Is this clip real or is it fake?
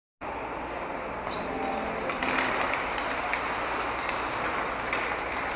real